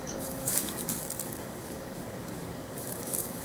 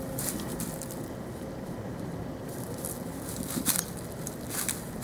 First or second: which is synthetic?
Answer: first